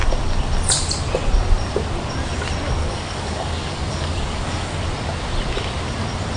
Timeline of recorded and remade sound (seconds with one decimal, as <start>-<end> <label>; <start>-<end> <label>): 0.0-2.8 recorded; 2.8-4.8 remade; 4.8-6.4 recorded